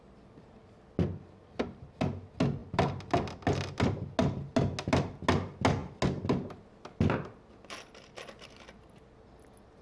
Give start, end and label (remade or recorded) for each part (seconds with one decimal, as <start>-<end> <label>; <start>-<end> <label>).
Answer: 0.0-9.8 recorded